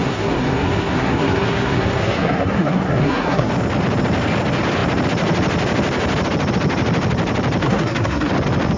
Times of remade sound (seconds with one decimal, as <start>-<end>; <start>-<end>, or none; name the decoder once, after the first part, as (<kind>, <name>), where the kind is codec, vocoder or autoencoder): 0.0-3.5 (codec, SNAC); 7.6-8.3